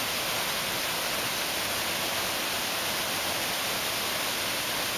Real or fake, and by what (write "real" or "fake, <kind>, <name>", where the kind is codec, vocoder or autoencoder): real